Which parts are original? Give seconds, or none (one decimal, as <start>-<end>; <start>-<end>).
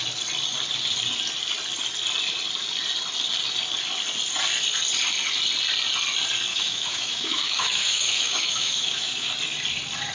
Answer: 0.0-6.5; 9.3-10.1